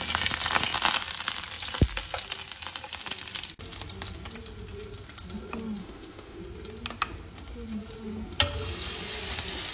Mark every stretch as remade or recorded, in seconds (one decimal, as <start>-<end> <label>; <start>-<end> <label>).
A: 0.0-5.8 recorded; 5.8-6.4 remade; 6.4-9.7 recorded